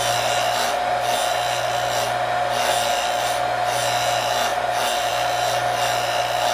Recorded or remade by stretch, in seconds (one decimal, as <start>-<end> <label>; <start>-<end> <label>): 0.0-6.5 recorded